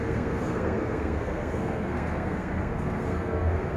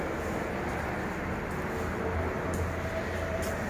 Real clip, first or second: second